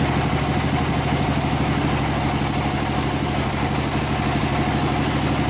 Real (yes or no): yes